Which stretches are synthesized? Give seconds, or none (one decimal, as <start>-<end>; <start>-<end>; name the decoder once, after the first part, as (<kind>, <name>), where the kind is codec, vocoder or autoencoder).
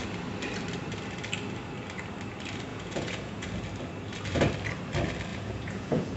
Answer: 2.7-3.5 (vocoder, Vocos); 5.3-6.2